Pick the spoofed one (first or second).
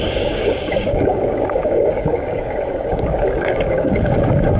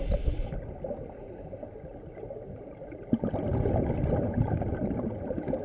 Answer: first